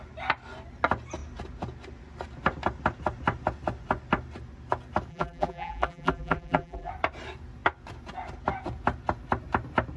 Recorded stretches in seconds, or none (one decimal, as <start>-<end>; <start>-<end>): 0.0-5.1; 6.9-10.0